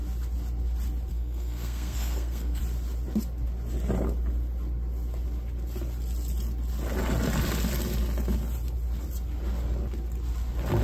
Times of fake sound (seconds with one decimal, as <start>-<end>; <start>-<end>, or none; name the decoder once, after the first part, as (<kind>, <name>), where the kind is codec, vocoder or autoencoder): 1.1-2.6 (codec, SNAC)